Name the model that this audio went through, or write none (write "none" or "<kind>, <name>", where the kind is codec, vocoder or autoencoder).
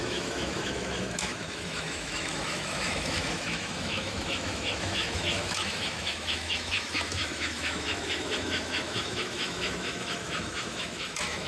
autoencoder, DAC-VAE